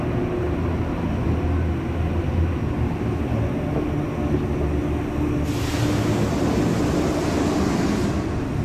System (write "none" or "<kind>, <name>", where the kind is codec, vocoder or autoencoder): none